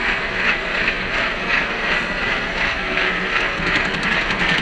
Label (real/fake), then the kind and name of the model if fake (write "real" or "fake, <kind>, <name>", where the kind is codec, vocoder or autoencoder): fake, codec, SNAC